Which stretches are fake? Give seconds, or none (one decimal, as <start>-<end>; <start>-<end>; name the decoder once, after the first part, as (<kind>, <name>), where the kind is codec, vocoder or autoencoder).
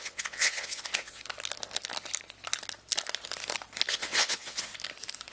0.0-1.2 (vocoder, WaveNeXt); 3.9-4.7